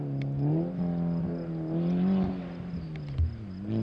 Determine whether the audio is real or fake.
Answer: real